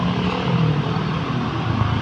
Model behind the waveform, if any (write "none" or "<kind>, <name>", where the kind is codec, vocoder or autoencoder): none